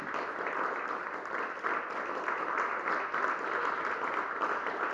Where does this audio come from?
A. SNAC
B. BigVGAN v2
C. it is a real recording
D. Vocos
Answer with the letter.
C